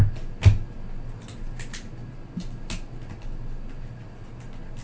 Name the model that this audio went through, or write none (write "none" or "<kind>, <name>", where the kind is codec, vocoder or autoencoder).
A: none